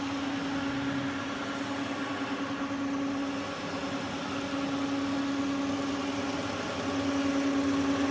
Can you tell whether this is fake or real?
real